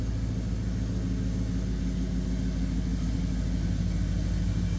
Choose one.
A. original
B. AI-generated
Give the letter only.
A